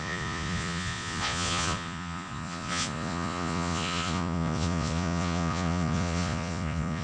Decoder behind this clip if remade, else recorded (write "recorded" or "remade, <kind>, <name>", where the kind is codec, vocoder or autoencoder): remade, vocoder, Vocos